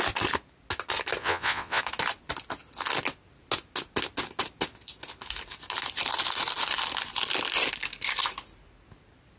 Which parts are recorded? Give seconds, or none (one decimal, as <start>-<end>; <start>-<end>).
0.0-1.2; 1.8-9.4